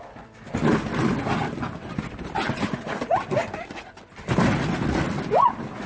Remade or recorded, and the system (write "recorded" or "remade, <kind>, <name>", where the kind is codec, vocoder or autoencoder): recorded